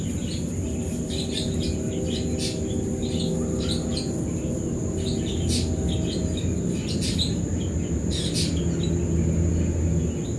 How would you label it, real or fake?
real